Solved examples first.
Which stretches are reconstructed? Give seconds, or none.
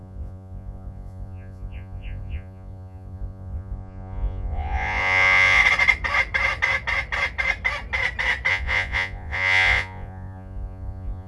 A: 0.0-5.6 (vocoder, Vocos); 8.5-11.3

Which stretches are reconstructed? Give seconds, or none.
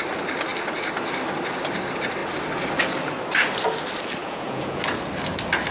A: 4.2-4.8 (vocoder, Vocos)